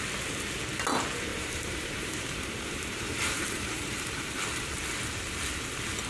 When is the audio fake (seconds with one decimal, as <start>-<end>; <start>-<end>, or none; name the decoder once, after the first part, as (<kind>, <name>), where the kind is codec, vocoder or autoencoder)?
1.3-4.7 (vocoder, BigVGAN v2)